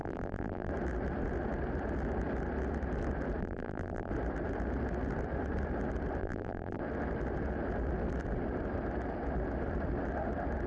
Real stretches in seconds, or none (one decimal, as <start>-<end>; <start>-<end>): 0.7-3.4; 4.1-6.2; 6.8-10.7